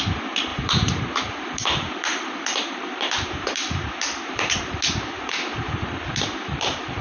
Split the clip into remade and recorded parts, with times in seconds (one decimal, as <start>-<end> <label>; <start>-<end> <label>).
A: 0.0-0.5 recorded; 0.5-4.7 remade; 4.7-7.0 recorded